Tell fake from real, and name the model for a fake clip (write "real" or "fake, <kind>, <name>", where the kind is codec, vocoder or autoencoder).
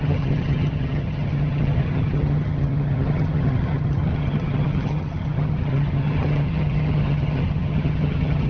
fake, vocoder, HiFi-GAN